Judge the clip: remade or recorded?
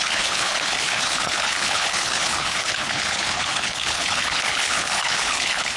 remade